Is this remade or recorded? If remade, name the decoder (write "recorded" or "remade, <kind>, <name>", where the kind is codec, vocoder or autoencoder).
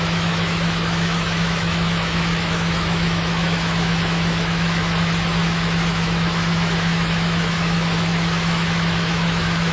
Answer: remade, autoencoder, DAC-VAE